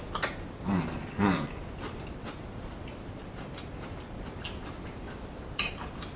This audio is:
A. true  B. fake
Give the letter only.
A